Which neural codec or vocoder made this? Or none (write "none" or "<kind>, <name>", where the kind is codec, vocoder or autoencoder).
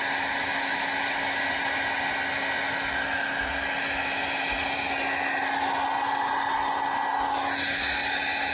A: none